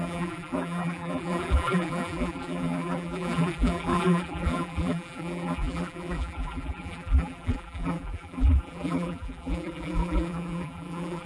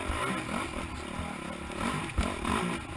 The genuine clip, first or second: second